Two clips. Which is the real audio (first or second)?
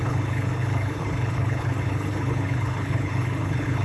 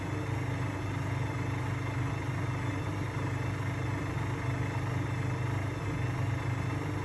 second